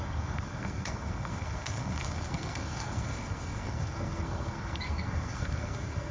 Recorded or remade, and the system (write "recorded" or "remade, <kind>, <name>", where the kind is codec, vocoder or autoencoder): remade, codec, SNAC